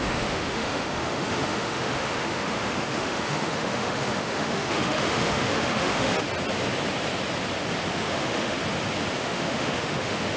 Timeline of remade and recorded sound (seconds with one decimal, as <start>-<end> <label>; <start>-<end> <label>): 0.0-6.1 remade; 6.1-7.9 recorded; 7.9-8.6 remade; 8.6-9.2 recorded; 9.2-10.4 remade